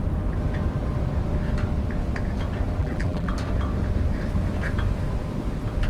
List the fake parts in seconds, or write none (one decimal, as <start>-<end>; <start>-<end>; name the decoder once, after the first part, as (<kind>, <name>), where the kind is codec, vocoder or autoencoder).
2.8-3.3 (vocoder, BigVGAN v2)

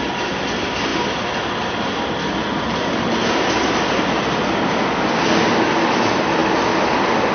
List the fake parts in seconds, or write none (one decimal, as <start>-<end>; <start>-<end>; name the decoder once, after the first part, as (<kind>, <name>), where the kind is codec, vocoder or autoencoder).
none

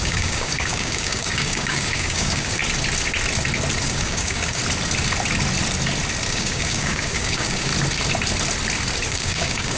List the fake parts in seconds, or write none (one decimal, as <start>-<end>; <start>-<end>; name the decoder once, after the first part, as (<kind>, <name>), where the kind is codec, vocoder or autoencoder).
0.0-2.6 (codec, DAC); 3.8-4.6; 6.3-7.7; 9.1-9.8

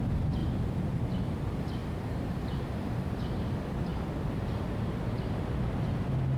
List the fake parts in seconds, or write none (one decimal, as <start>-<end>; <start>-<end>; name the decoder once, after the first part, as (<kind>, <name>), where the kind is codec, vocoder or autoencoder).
1.8-3.5 (vocoder, BigVGAN v2)

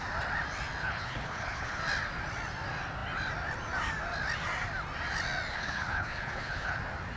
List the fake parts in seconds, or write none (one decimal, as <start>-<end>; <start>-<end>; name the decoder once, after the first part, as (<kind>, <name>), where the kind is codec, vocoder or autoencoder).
0.8-1.8 (codec, HILCodec); 5.5-6.8

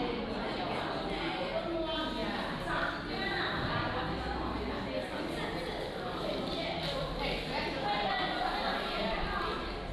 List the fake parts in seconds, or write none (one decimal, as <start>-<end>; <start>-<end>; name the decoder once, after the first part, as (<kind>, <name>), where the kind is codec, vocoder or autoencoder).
none

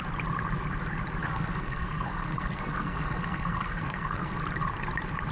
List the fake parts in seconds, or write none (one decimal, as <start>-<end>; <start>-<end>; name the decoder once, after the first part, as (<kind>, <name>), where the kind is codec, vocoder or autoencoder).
1.2-4.4 (codec, SNAC)

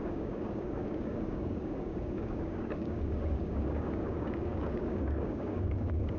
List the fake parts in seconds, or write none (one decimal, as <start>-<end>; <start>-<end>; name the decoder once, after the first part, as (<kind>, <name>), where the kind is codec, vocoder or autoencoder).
0.0-6.2 (codec, DAC)